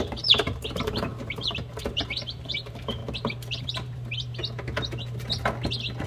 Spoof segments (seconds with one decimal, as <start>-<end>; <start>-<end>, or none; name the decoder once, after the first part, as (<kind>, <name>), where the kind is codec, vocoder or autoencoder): 0.0-3.0 (vocoder, BigVGAN v2); 3.6-4.4